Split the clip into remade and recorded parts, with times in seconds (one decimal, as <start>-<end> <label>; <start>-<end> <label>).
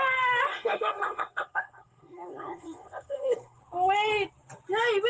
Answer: 0.0-0.5 recorded; 0.5-3.6 remade; 3.6-5.1 recorded